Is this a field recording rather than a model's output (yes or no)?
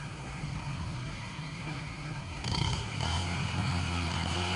no